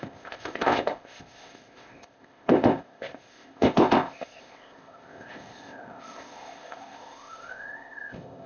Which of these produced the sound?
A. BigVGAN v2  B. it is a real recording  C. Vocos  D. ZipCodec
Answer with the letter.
D